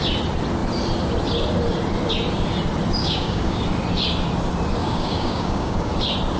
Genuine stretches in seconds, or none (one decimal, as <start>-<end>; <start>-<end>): 0.0-3.0; 3.6-4.8; 5.9-6.4